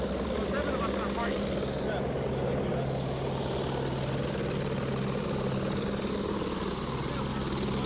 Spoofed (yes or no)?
no